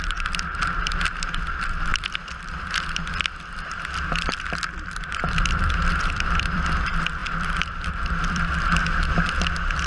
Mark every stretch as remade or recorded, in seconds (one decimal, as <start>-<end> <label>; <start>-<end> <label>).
0.0-8.8 remade; 8.8-9.5 recorded; 9.5-9.9 remade